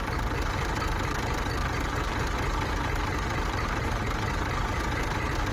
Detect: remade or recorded remade